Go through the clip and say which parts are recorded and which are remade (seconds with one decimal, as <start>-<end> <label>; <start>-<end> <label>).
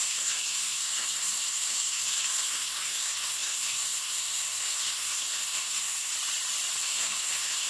0.0-6.1 remade; 6.1-6.8 recorded; 6.8-7.7 remade